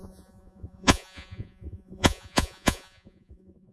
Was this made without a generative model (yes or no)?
no